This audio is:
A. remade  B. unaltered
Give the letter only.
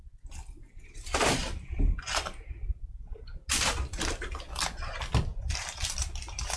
B